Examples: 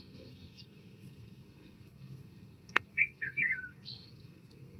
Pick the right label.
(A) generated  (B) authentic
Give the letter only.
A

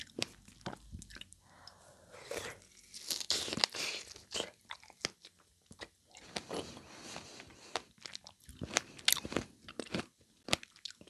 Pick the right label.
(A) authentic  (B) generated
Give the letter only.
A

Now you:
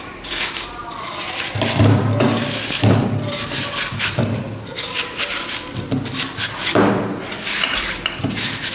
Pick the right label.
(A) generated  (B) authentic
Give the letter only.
B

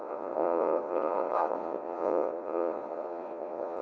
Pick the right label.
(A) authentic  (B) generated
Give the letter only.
B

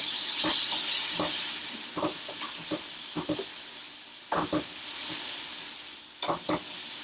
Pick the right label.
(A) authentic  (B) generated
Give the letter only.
A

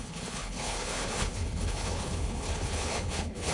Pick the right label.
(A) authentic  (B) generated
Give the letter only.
B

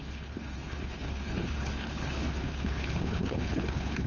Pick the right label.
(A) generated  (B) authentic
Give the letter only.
A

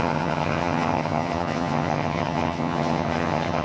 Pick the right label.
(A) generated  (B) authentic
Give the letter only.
A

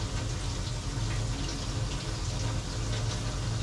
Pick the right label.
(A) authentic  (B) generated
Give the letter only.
A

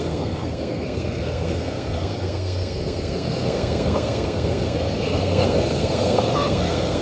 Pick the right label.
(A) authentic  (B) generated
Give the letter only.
B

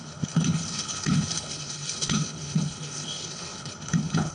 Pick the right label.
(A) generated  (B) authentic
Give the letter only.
A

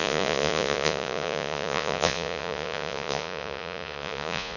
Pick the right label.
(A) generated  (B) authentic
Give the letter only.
A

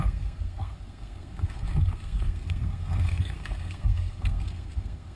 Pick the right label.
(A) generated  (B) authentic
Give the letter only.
A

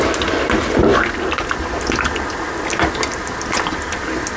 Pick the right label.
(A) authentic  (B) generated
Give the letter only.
A